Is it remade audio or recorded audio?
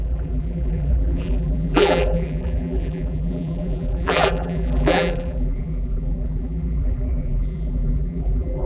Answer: remade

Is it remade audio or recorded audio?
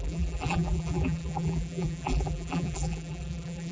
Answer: remade